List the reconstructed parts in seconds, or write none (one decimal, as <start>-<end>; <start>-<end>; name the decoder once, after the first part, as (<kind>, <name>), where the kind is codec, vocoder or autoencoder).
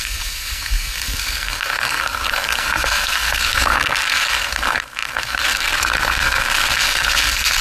0.0-7.6 (codec, SNAC)